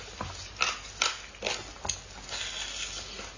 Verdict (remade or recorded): recorded